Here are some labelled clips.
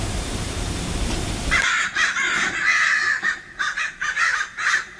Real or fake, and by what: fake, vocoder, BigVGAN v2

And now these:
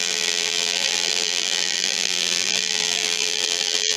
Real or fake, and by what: fake, vocoder, BigVGAN v2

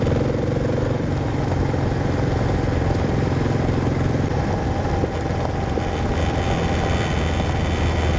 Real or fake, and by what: real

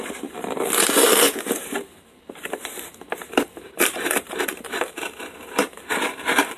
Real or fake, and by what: fake, vocoder, BigVGAN v2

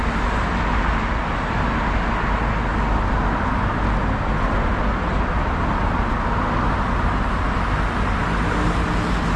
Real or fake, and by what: real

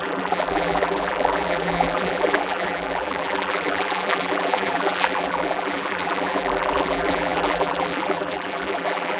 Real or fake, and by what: fake, vocoder, BigVGAN v2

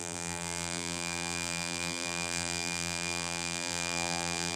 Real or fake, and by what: fake, vocoder, BigVGAN v2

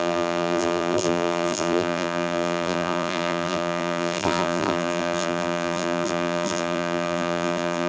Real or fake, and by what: fake, vocoder, BigVGAN v2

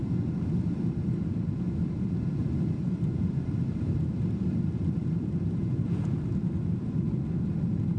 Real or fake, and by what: fake, vocoder, BigVGAN v2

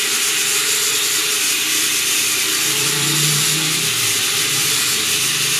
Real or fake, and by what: fake, vocoder, BigVGAN v2